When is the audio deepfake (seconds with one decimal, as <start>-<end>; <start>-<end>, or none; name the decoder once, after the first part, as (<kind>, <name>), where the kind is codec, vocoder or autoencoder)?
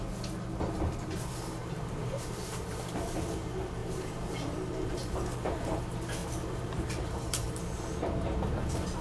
1.6-2.7 (vocoder, BigVGAN v2); 3.8-5.8; 6.2-7.8